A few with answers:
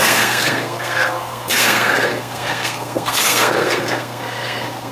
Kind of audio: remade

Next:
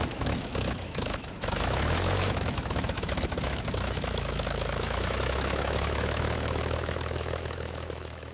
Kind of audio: remade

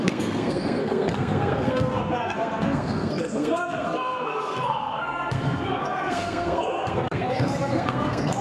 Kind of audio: remade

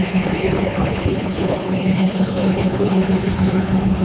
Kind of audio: remade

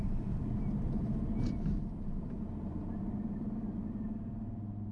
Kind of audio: remade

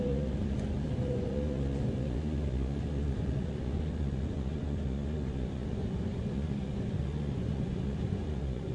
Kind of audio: remade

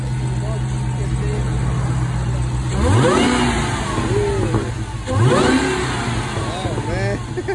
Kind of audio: recorded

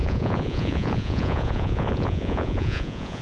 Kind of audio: remade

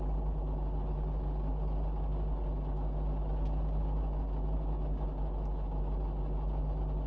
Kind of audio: recorded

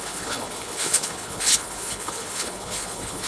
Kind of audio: remade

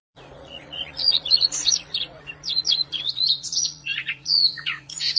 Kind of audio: remade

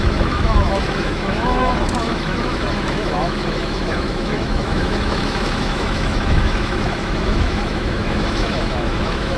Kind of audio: remade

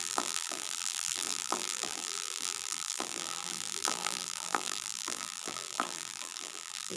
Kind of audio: remade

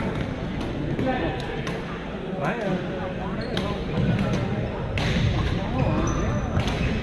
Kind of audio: recorded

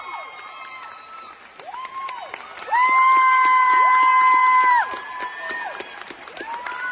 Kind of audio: recorded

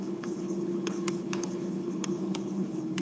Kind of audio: remade